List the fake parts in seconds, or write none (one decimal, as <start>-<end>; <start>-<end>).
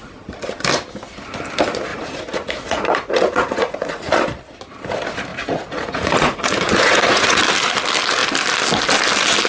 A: 1.9-4.2; 5.3-7.4